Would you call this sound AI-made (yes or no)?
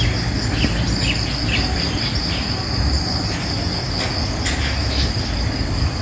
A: no